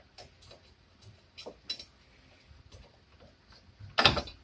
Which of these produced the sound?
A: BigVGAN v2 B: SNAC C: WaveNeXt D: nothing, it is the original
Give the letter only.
D